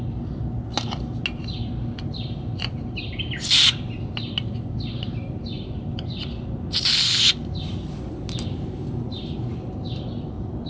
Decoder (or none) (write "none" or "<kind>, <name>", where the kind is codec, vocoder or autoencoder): none